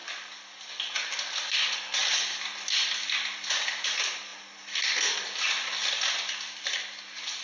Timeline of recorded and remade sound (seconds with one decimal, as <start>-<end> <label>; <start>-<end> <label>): 0.0-4.3 recorded; 4.3-5.0 remade; 5.0-7.4 recorded